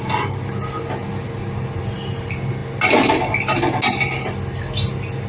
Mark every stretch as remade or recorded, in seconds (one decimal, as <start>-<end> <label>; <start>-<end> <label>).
0.0-5.3 recorded